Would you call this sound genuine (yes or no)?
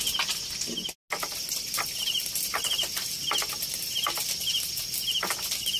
yes